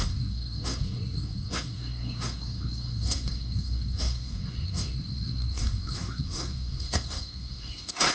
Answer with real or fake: fake